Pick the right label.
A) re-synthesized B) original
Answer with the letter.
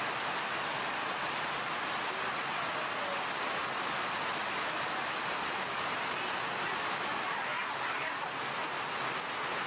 B